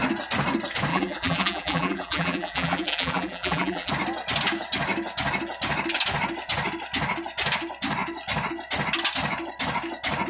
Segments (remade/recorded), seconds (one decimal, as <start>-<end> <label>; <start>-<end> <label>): 0.0-0.9 recorded; 0.9-3.9 remade; 3.9-10.3 recorded